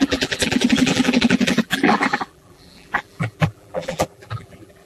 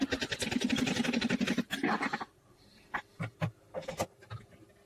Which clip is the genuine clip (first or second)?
second